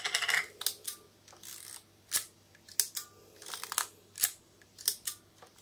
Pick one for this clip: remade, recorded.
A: recorded